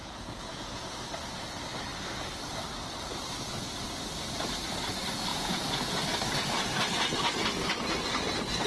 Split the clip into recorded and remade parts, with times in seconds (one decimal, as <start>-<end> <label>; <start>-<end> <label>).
0.0-0.9 remade; 0.9-5.3 recorded; 5.3-6.0 remade; 6.0-8.7 recorded